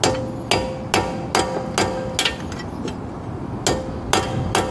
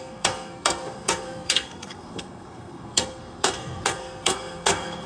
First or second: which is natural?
first